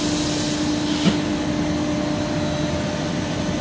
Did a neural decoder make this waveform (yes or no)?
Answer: no